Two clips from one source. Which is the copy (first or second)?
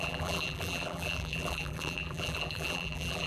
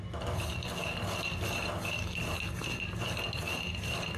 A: first